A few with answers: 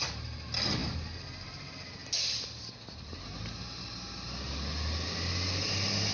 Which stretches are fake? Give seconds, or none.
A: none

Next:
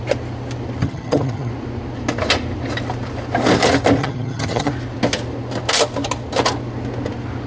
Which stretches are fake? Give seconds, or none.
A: 0.8-1.5 (vocoder, HiFi-GAN); 4.0-4.7

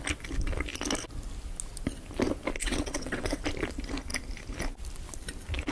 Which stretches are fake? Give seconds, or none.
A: 2.6-3.4 (vocoder, WaveNeXt)

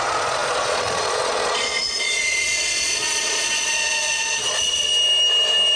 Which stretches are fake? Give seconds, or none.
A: 0.0-4.9 (vocoder, Vocos)

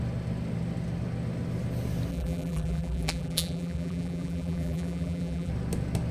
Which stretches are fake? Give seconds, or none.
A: 2.1-5.5 (vocoder, BigVGAN v2)

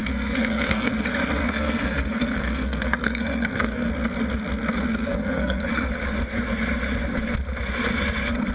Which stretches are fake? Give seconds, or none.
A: 0.0-0.9 (codec, SNAC); 1.4-3.9; 4.9-5.9